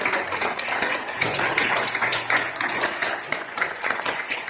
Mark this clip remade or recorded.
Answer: remade